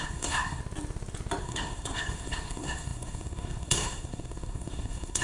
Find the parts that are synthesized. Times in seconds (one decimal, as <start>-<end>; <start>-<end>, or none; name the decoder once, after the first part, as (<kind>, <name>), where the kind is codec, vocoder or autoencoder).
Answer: 0.0-0.6 (codec, SNAC); 1.4-5.2